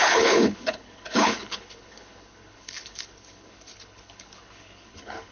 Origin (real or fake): fake